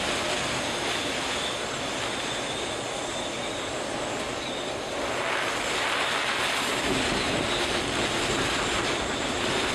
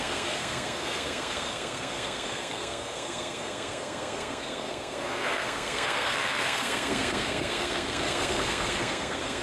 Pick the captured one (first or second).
first